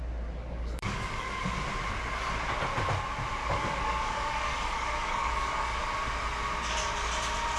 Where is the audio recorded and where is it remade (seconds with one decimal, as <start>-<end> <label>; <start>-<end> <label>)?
0.0-0.4 recorded; 0.4-1.5 remade; 1.5-3.4 recorded; 3.4-5.8 remade; 5.8-7.6 recorded